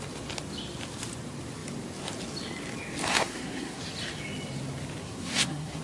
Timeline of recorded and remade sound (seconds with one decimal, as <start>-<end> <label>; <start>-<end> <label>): 0.0-3.1 recorded; 3.1-3.8 remade; 3.8-5.0 recorded; 5.0-5.8 remade